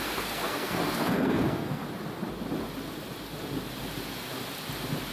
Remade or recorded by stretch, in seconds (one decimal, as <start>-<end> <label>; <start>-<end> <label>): 0.0-1.8 remade; 1.8-5.1 recorded